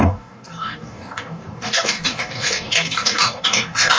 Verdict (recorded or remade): remade